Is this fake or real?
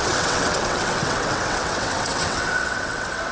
fake